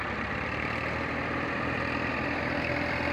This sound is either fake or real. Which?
real